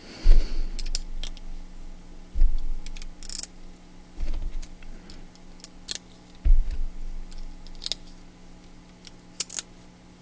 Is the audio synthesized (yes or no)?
no